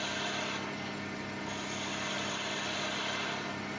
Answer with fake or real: real